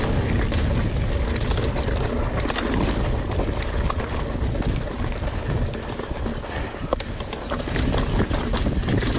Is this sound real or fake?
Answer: real